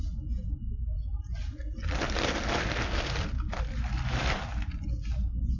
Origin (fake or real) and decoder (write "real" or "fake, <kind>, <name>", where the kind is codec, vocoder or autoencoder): real